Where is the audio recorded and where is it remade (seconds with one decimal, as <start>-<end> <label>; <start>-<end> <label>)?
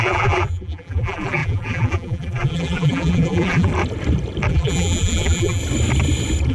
0.0-3.7 remade; 3.7-4.5 recorded; 4.5-5.6 remade; 5.6-6.5 recorded